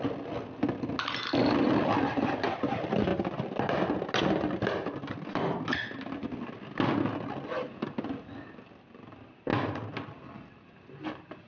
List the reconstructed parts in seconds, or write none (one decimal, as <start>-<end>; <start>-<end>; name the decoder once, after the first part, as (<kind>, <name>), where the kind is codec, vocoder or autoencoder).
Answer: none